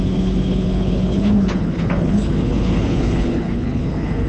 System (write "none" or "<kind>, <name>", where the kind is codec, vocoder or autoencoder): codec, HILCodec